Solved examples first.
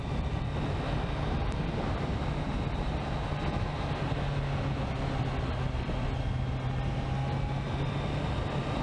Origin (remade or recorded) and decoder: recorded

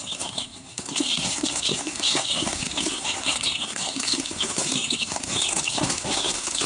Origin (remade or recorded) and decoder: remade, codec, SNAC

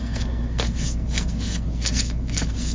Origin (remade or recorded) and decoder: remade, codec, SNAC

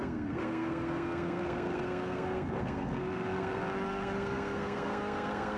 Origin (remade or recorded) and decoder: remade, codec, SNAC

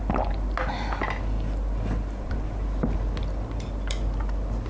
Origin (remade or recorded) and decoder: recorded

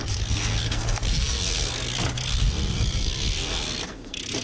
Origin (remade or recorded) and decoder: remade, codec, SNAC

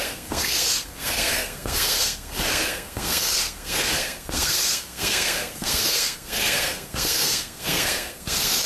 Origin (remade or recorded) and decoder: remade, codec, SNAC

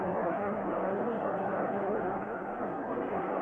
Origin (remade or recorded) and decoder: remade, codec, SNAC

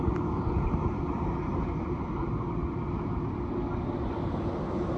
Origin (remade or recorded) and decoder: recorded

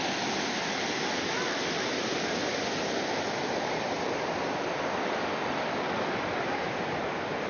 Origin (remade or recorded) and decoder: recorded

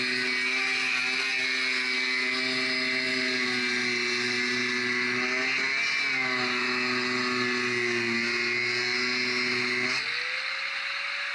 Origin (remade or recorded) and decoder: recorded